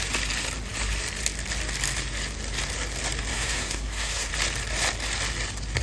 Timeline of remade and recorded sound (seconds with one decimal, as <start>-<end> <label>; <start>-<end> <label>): 0.0-3.3 recorded; 3.3-4.3 remade; 4.3-5.8 recorded